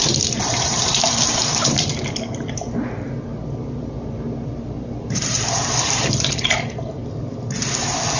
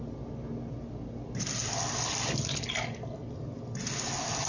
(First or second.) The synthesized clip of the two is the first